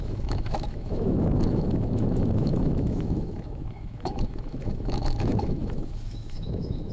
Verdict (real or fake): fake